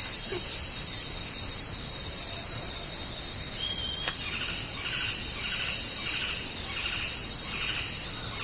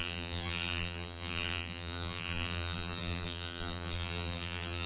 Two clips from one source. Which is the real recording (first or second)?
first